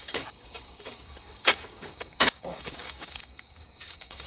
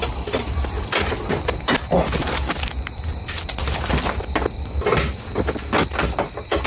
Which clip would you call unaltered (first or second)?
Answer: second